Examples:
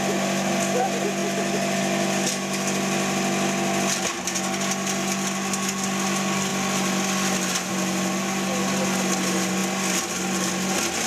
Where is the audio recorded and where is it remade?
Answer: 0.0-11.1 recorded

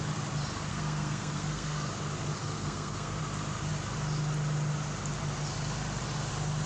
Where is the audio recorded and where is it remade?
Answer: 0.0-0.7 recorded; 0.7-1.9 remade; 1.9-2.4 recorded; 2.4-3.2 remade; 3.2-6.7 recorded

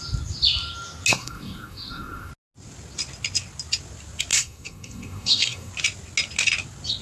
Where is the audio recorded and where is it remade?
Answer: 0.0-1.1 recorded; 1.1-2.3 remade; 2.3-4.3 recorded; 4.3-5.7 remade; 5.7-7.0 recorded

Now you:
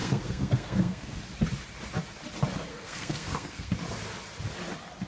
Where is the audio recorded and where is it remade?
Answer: 0.0-1.2 remade; 1.2-2.7 recorded; 2.7-3.7 remade; 3.7-5.1 recorded

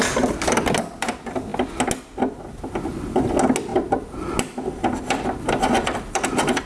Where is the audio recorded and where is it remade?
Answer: 0.0-6.7 recorded